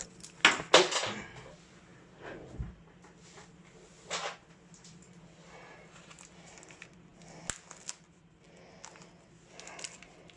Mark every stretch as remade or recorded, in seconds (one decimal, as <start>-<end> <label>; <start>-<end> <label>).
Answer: 0.0-10.4 recorded

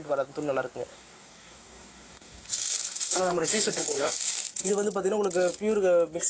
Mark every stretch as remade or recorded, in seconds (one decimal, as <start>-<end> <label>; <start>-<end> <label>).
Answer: 0.0-0.9 recorded; 0.9-4.7 remade; 4.7-6.3 recorded

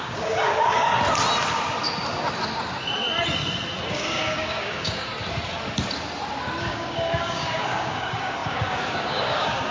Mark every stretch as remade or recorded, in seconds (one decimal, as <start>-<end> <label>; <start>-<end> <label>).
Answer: 0.0-0.9 remade; 0.9-3.9 recorded; 3.9-5.1 remade; 5.1-6.6 recorded; 6.6-9.7 remade

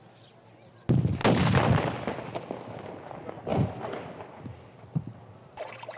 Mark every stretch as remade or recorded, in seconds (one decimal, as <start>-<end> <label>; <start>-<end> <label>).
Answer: 0.0-6.0 recorded

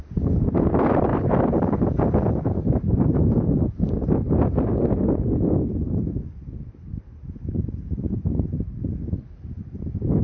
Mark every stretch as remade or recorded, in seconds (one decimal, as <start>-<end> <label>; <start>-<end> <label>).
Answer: 0.0-10.2 recorded

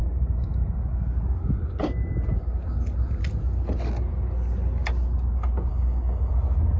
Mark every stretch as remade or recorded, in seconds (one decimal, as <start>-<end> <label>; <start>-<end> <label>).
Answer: 0.0-5.7 recorded; 5.7-6.3 remade; 6.3-6.8 recorded